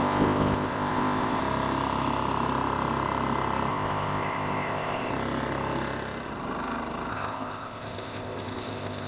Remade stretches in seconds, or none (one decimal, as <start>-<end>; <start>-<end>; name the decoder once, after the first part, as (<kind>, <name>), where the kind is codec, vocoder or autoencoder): 0.0-1.4 (codec, ZipCodec); 3.7-5.1; 7.1-9.1